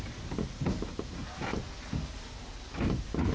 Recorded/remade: recorded